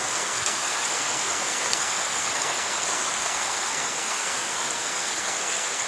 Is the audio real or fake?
fake